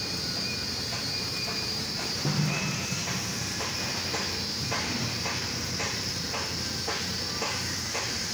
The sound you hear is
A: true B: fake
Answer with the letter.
B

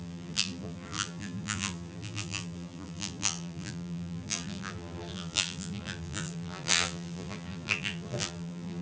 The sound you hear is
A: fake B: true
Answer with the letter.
A